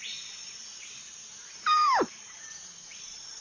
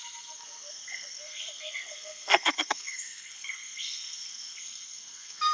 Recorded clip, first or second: first